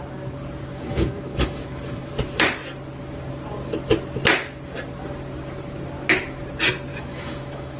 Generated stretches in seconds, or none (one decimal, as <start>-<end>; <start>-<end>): 0.7-2.1; 6.9-7.8